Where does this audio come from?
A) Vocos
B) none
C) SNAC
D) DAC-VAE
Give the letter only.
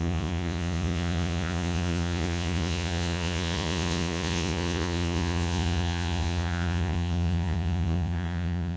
A